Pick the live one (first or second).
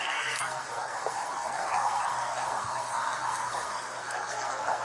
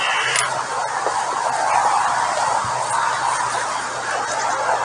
second